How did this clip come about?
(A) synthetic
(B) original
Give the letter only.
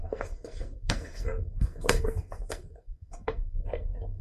A